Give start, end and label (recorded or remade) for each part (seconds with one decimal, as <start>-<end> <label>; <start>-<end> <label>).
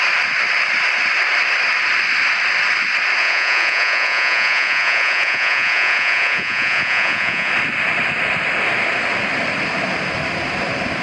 0.0-3.2 recorded; 3.2-7.5 remade; 7.5-11.0 recorded